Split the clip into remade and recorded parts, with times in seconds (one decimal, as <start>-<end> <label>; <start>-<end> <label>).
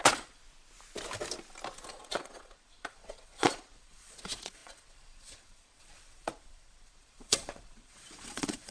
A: 0.0-0.4 remade; 0.4-1.9 recorded; 1.9-8.7 remade